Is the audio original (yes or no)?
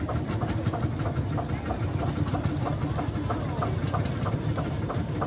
yes